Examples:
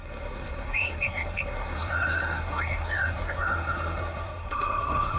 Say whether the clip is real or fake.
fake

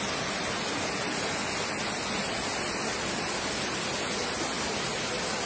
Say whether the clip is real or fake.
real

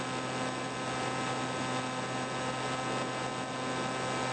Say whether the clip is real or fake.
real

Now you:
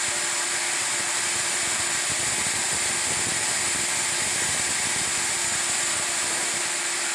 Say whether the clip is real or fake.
real